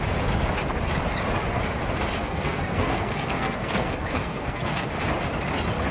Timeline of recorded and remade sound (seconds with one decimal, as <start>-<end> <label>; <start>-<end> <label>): 0.0-2.2 recorded; 2.2-4.9 remade; 4.9-5.9 recorded